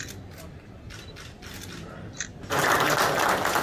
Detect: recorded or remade recorded